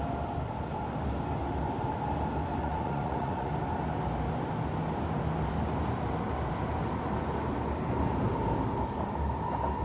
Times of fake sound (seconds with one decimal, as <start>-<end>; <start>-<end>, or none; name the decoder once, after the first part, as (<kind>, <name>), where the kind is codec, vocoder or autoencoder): 2.6-3.5 (vocoder, Vocos)